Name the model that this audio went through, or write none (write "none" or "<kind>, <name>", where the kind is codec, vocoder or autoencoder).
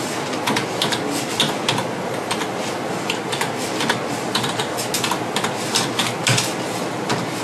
none